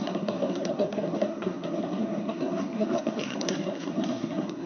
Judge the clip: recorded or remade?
remade